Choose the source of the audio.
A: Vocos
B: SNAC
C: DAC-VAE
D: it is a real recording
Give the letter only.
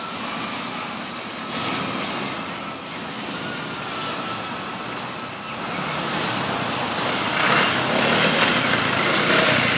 D